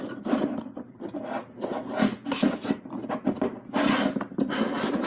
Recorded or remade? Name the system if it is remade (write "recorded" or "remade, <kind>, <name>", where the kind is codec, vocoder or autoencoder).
recorded